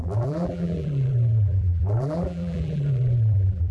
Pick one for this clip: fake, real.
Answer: fake